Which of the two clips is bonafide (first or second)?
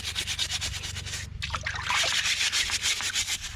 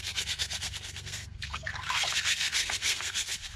first